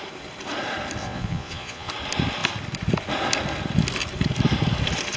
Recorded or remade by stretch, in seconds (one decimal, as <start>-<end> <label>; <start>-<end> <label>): 0.0-1.0 recorded; 1.0-1.9 remade; 1.9-5.2 recorded